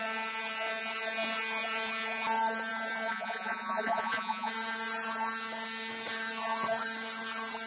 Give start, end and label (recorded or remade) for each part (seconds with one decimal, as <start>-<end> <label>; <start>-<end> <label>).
0.0-3.1 recorded; 3.1-4.5 remade; 4.5-7.7 recorded